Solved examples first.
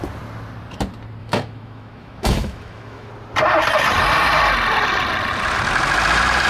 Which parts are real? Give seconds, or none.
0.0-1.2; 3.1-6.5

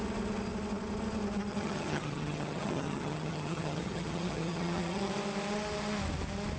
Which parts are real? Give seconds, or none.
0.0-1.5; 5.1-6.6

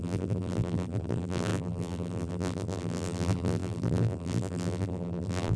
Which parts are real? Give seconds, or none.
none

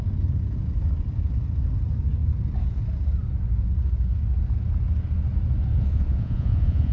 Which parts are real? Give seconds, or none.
0.0-5.7

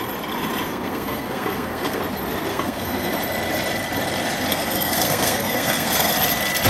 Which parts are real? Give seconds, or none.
0.0-0.7; 2.0-2.5; 3.1-4.5; 6.1-6.7

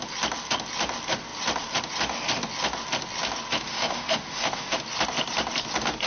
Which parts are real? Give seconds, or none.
0.0-3.5; 4.8-6.1

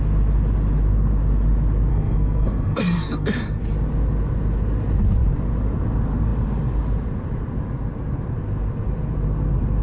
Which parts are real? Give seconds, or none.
0.0-1.9; 3.6-9.8

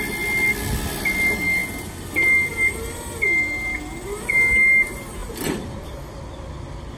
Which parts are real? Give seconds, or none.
0.0-5.2; 5.9-7.0